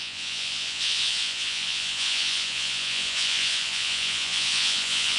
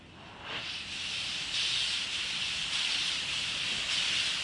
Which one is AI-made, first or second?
first